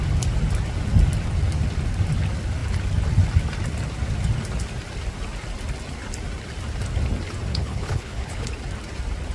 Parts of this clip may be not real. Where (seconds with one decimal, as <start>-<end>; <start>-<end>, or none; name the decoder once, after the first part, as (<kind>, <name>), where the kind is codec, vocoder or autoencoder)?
7.5-8.5 (codec, HILCodec)